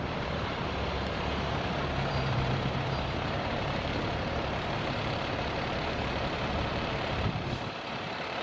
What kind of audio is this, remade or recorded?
remade